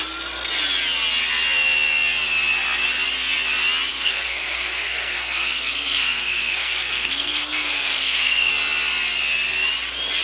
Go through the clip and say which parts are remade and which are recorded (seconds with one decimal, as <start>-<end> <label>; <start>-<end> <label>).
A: 0.0-3.9 recorded; 3.9-8.5 remade; 8.5-10.2 recorded